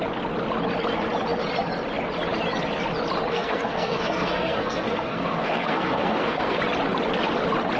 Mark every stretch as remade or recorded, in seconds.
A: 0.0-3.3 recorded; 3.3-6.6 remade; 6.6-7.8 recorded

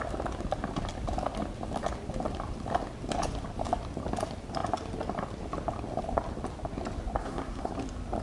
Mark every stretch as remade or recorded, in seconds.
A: 0.0-7.2 recorded; 7.2-7.7 remade; 7.7-8.2 recorded

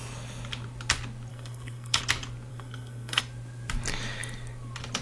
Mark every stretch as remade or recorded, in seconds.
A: 0.0-1.3 recorded; 1.3-2.0 remade; 2.0-2.5 recorded; 2.5-3.2 remade; 3.2-5.0 recorded

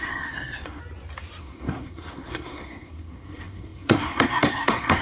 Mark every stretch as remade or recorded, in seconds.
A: 0.0-0.8 remade; 0.8-1.4 recorded; 1.4-5.0 remade

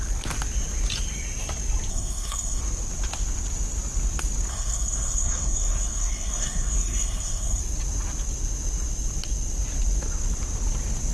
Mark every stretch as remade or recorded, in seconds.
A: 0.0-1.9 recorded; 1.9-2.6 remade; 2.6-4.5 recorded; 4.5-7.6 remade; 7.6-11.1 recorded

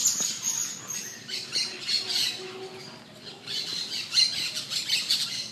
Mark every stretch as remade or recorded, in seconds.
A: 0.0-5.5 recorded